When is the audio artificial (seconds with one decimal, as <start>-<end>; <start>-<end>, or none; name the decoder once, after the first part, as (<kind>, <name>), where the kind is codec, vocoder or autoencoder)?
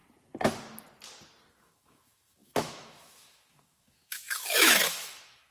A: 1.5-5.5 (autoencoder, DAC-VAE)